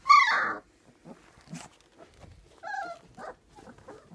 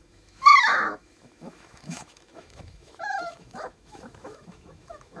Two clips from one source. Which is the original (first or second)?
first